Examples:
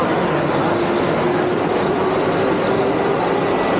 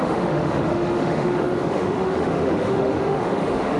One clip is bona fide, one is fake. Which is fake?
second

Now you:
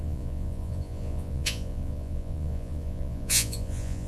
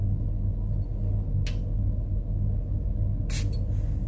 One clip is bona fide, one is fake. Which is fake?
first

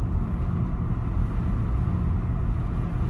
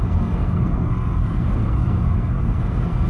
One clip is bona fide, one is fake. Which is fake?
second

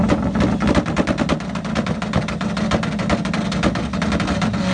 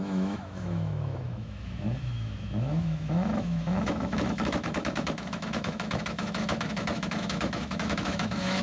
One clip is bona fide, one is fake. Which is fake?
second